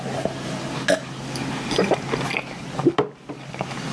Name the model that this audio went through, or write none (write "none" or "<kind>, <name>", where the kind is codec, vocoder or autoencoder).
none